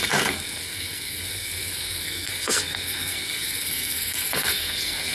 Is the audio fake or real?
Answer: fake